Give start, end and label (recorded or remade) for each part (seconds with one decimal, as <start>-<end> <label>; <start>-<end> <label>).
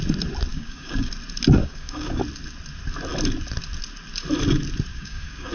0.0-0.5 recorded; 0.5-1.1 remade; 1.1-1.6 recorded; 1.6-2.2 remade; 2.2-4.9 recorded; 4.9-5.5 remade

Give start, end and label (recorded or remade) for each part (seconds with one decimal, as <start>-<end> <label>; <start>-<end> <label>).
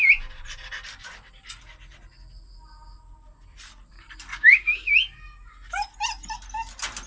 0.0-4.3 recorded; 4.3-4.9 remade; 4.9-7.1 recorded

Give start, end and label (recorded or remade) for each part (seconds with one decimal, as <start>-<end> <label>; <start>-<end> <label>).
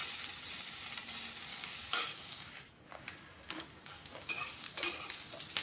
0.0-1.5 recorded; 1.5-4.9 remade; 4.9-5.6 recorded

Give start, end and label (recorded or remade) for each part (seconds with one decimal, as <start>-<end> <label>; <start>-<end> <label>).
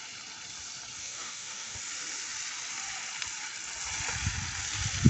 0.0-1.0 recorded; 1.0-1.8 remade; 1.8-5.1 recorded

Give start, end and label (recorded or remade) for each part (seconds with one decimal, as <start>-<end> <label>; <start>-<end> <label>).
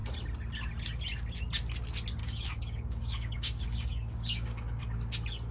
0.0-2.2 recorded; 2.2-4.8 remade; 4.8-5.5 recorded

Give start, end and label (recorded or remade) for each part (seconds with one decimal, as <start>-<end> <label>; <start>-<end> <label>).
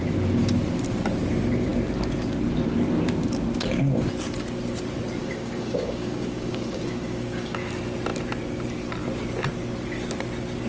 0.0-5.2 recorded; 5.2-7.7 remade; 7.7-10.7 recorded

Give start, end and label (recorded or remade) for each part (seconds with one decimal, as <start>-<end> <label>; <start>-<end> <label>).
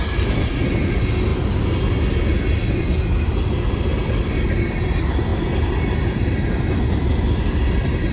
0.0-8.1 recorded